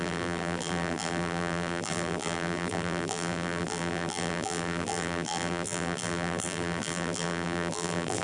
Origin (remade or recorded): remade